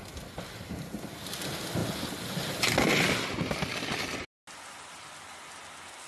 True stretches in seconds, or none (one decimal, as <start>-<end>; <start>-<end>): 0.0-6.1